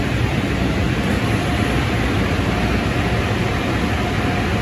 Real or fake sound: real